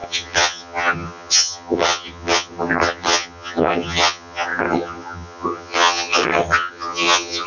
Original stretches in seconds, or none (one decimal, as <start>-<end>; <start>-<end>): none